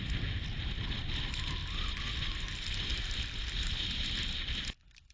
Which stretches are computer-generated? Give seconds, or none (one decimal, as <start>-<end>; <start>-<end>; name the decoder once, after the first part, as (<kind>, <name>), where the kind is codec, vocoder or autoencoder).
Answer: none